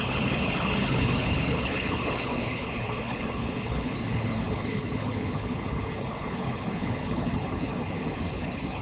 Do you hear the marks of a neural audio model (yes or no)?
yes